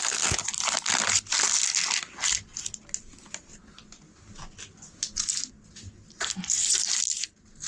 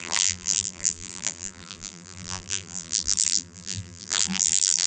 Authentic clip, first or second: first